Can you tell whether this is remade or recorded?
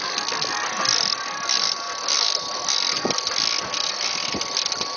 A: recorded